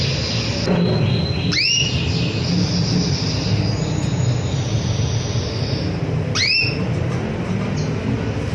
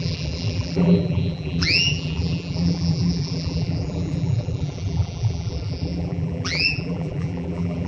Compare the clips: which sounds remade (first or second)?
second